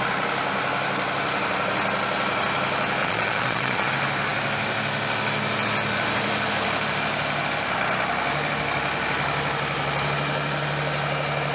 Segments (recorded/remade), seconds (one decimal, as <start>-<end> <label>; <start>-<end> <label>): 0.0-3.0 recorded; 3.0-3.9 remade; 3.9-11.5 recorded